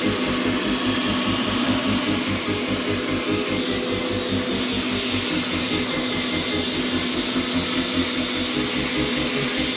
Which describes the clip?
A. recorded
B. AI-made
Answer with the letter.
A